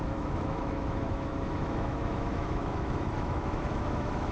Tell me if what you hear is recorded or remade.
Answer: remade